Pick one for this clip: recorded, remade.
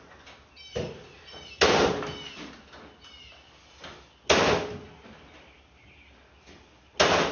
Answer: recorded